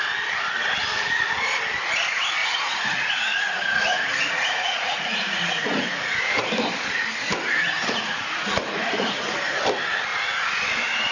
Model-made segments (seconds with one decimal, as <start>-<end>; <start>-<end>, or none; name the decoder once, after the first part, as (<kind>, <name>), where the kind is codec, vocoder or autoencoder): 2.4-6.4 (vocoder, Vocos); 7.8-9.6; 10.1-10.6